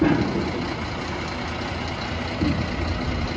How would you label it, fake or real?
real